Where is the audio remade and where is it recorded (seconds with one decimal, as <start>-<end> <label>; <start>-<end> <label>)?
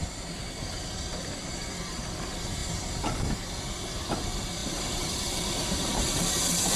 0.0-2.6 recorded; 2.6-3.3 remade; 3.3-4.6 recorded; 4.6-6.8 remade